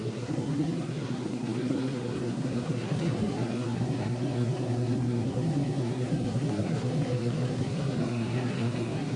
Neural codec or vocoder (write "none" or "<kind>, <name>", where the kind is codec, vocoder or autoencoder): codec, SNAC